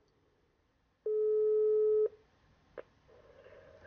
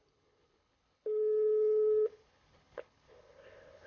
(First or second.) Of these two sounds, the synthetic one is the second